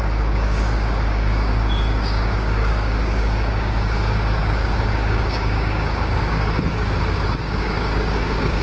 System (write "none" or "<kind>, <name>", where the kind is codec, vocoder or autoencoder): codec, DAC